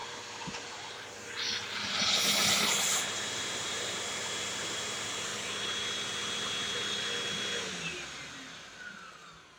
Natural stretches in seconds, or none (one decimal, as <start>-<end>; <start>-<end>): 0.0-2.8; 5.3-7.6